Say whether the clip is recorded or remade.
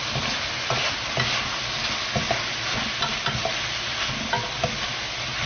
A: recorded